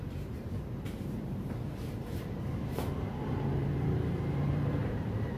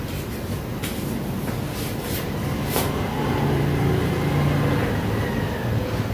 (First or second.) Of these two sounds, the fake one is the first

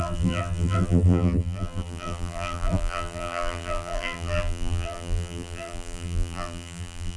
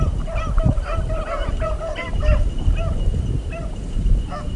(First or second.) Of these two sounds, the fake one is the first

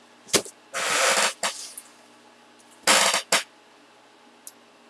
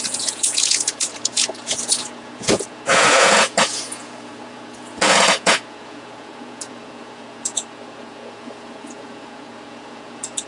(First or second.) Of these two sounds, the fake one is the second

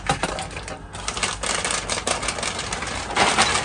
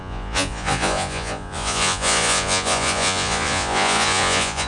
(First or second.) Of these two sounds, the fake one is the second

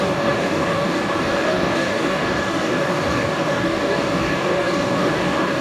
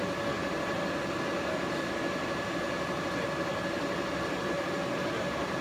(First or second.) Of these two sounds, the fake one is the first